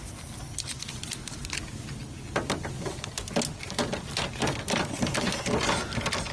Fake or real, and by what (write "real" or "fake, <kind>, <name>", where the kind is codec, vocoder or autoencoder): real